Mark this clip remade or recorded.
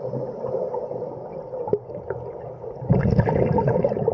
recorded